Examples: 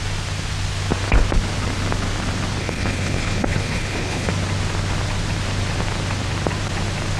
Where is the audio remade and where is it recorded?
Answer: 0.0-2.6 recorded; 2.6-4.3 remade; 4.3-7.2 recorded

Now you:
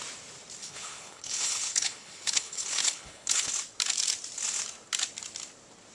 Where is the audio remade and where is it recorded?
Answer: 0.0-0.6 recorded; 0.6-3.5 remade; 3.5-5.9 recorded

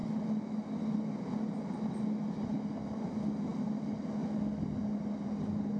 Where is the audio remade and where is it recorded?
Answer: 0.0-5.8 recorded

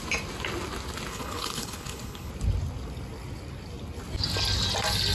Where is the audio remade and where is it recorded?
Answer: 0.0-1.1 recorded; 1.1-2.3 remade; 2.3-5.1 recorded